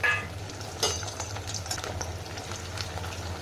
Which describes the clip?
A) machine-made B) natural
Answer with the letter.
B